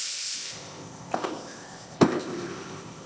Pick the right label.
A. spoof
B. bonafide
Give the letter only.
A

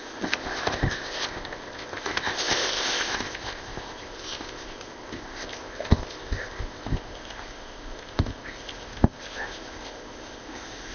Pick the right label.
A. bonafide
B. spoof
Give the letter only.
B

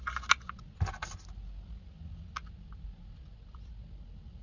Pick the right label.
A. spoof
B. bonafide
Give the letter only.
B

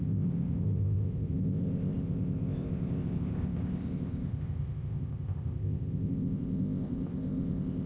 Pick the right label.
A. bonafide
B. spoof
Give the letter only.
B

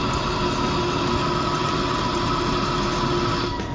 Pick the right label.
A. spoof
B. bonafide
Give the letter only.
B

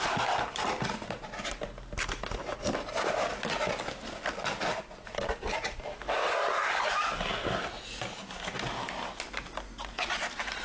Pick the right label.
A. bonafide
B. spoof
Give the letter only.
A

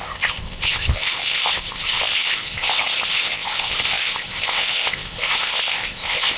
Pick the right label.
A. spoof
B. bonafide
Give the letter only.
A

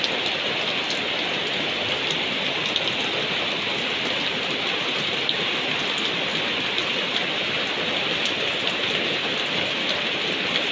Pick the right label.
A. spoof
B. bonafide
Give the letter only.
B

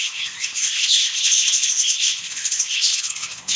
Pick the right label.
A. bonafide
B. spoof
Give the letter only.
B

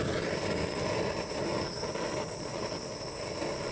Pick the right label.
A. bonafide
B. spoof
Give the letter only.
A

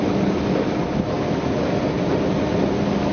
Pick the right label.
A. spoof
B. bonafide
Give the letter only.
B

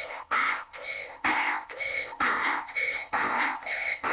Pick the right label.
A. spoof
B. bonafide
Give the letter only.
A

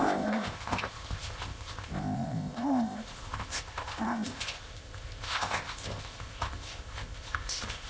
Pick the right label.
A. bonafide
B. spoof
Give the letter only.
B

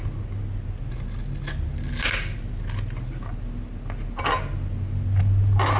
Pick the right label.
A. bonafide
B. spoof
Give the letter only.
A